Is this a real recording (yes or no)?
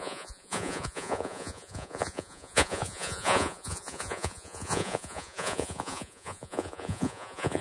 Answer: no